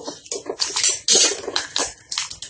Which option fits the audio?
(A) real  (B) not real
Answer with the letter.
A